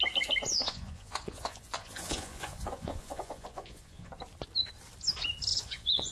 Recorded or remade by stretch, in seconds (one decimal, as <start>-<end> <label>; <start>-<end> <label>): 0.0-0.6 recorded; 0.6-4.1 remade; 4.1-5.5 recorded; 5.5-6.1 remade